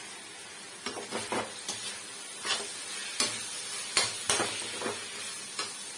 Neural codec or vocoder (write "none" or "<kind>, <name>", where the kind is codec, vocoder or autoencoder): none